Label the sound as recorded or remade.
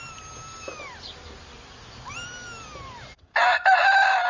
recorded